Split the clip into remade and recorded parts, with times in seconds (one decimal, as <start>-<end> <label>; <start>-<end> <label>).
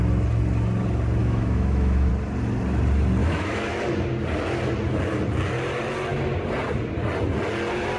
0.0-1.2 recorded; 1.2-2.1 remade; 2.1-3.2 recorded; 3.2-3.8 remade; 3.8-8.0 recorded